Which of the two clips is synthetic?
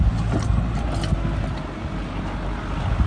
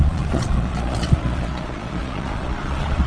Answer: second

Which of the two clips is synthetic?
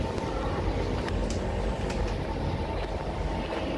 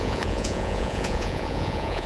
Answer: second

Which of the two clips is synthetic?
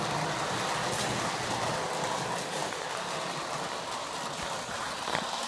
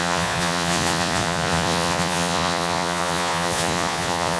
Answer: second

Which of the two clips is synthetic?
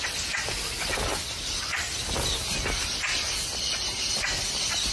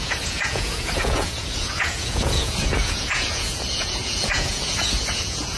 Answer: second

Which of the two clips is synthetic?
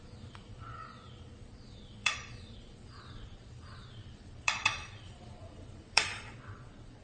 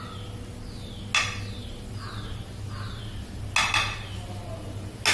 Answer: first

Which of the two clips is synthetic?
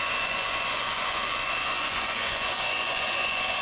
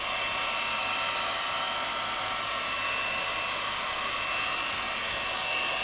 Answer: first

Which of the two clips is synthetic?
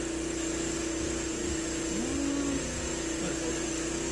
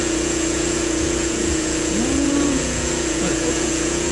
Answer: second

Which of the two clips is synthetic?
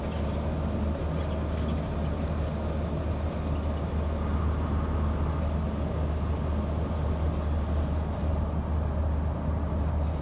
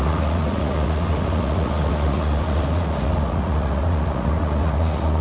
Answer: second